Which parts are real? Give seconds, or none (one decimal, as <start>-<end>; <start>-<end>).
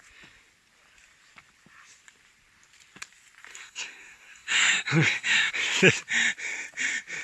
0.0-3.5; 5.5-7.2